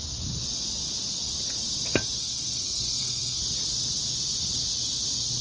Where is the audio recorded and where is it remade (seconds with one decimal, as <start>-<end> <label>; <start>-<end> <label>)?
0.0-2.2 recorded; 2.2-3.4 remade; 3.4-5.4 recorded